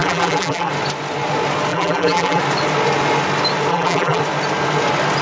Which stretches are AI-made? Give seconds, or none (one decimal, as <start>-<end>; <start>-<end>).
0.0-0.7; 1.7-2.4; 3.7-4.2